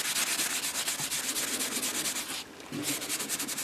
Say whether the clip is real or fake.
real